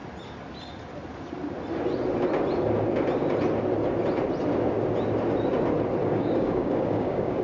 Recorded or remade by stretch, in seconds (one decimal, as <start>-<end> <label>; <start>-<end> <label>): 0.0-6.0 recorded; 6.0-7.4 remade